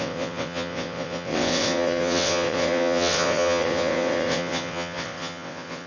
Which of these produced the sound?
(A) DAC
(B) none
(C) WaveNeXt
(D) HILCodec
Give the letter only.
C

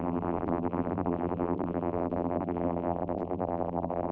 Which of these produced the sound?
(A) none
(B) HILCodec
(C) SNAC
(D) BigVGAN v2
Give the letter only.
D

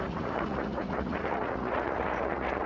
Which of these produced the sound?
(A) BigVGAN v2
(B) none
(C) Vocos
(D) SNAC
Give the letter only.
C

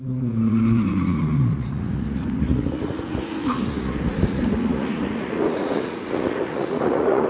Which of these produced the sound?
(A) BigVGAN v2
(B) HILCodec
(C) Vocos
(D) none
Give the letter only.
C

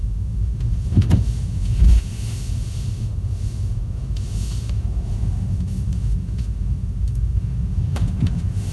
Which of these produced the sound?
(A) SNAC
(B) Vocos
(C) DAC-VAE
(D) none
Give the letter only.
C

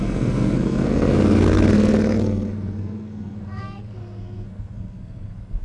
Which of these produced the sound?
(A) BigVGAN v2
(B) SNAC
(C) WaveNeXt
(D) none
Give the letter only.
B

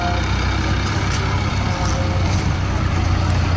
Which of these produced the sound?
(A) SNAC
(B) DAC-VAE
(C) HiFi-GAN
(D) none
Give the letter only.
D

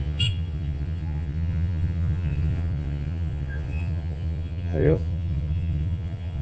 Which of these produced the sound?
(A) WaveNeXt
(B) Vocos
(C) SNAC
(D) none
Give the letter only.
B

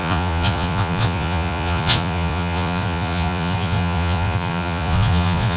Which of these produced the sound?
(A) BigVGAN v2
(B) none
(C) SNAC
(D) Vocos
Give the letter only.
D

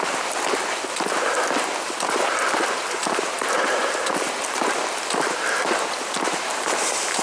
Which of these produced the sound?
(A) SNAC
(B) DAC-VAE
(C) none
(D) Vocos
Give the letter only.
C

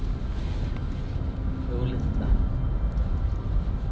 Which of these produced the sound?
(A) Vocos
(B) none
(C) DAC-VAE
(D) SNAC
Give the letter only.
B